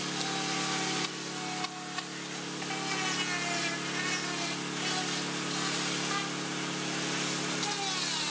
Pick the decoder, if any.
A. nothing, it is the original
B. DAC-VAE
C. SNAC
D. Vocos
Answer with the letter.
A